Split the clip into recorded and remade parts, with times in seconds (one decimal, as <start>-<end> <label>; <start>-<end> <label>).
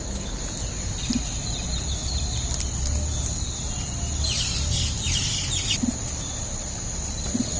0.0-7.6 recorded